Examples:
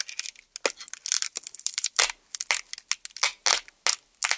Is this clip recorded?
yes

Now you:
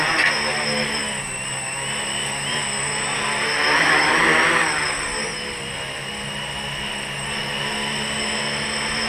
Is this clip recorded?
yes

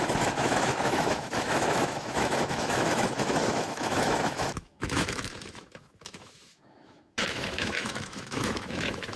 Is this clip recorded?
no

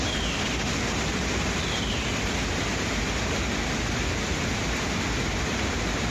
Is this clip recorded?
yes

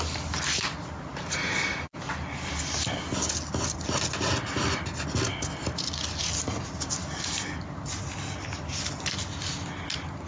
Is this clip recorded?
yes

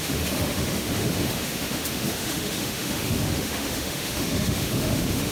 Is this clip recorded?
no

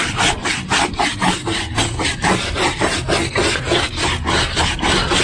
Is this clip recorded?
yes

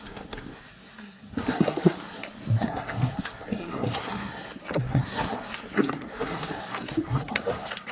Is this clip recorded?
no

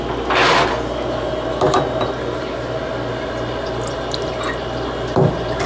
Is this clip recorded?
yes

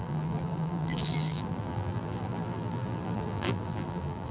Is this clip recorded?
no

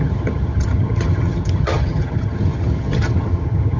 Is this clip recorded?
no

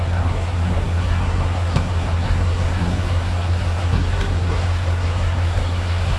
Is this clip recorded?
no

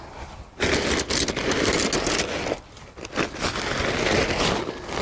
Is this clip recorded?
yes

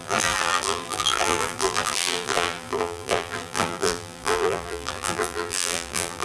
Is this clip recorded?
no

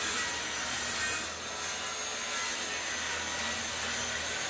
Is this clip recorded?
yes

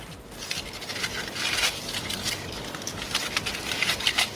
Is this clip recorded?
yes